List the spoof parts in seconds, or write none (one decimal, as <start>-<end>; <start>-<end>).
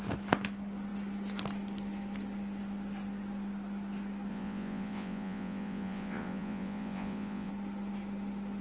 4.3-7.5